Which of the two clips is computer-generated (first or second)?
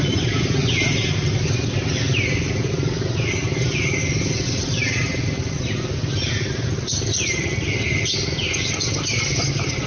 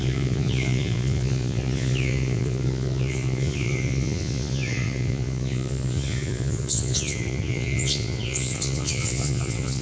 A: second